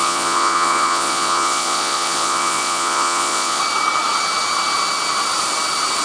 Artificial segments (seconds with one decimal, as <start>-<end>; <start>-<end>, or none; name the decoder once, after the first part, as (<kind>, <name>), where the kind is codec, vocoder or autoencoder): 0.0-3.6 (vocoder, Vocos)